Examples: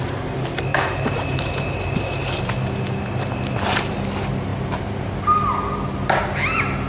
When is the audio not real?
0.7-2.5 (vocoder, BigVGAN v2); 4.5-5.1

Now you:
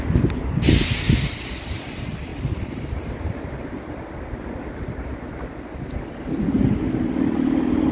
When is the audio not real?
none

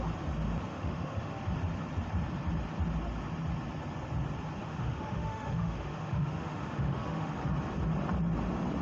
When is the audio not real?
0.7-1.4 (autoencoder, DAC-VAE); 4.6-7.3

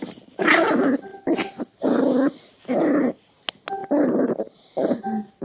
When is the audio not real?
0.0-0.7 (vocoder, BigVGAN v2); 1.1-2.8

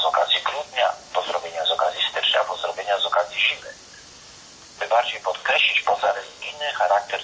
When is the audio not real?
5.4-6.5 (codec, HILCodec)